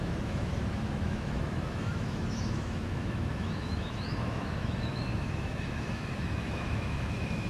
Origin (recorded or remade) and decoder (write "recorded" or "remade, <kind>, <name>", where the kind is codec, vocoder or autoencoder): remade, autoencoder, DAC-VAE